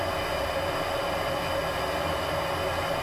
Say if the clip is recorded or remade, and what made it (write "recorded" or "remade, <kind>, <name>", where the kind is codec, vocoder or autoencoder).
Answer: recorded